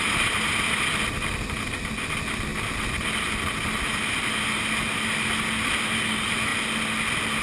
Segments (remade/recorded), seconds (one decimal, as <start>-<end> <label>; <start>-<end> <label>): 0.0-7.4 recorded

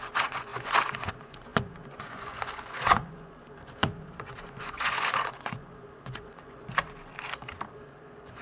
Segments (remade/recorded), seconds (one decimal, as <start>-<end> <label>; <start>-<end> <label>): 0.0-7.1 remade; 7.1-7.7 recorded; 7.7-8.4 remade

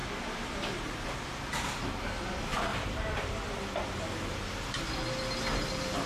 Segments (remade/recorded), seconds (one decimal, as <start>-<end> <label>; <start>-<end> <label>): 0.0-2.7 recorded; 2.7-3.3 remade; 3.3-6.1 recorded

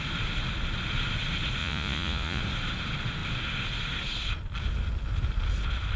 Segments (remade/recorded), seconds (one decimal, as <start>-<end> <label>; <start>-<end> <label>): 0.0-1.6 recorded; 1.6-2.4 remade; 2.4-6.0 recorded

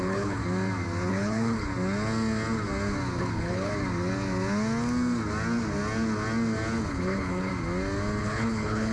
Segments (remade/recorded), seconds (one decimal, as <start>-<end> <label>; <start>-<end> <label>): 0.0-0.4 remade; 0.4-1.1 recorded; 1.1-1.7 remade; 1.7-3.2 recorded; 3.2-3.7 remade; 3.7-6.9 recorded; 6.9-7.5 remade; 7.5-8.2 recorded; 8.2-8.9 remade

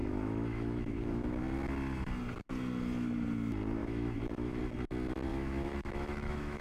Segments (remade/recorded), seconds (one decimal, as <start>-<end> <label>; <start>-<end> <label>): 0.0-1.4 remade; 1.4-3.8 recorded; 3.8-4.6 remade; 4.6-5.3 recorded; 5.3-6.6 remade

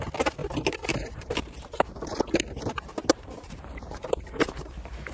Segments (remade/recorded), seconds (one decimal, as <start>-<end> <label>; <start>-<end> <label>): 0.0-0.4 recorded; 0.4-1.9 remade; 1.9-3.1 recorded; 3.1-5.1 remade

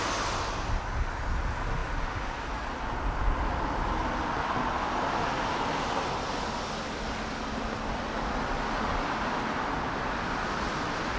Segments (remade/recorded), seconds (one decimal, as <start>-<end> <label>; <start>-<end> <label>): 0.0-11.2 recorded